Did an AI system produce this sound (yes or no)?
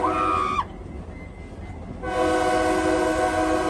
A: no